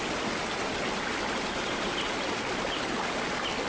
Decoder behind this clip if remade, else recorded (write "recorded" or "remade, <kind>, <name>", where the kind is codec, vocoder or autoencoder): recorded